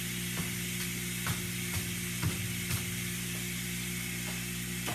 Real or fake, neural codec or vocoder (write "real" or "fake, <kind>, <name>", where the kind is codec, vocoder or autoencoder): real